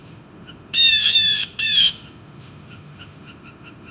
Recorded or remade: remade